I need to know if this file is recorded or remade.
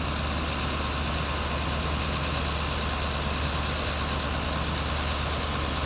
recorded